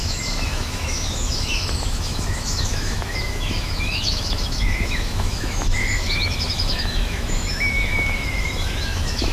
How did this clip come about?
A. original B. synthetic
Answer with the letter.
B